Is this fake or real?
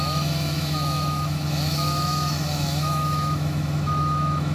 fake